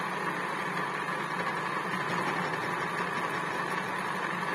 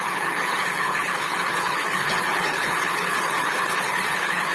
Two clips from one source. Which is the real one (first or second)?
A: first